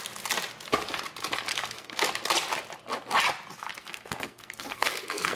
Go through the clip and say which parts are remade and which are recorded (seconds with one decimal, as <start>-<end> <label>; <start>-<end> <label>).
0.0-1.5 recorded; 1.5-2.1 remade; 2.1-3.8 recorded; 3.8-5.4 remade